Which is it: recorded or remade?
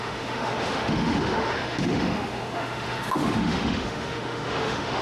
remade